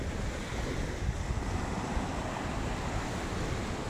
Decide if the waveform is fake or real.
real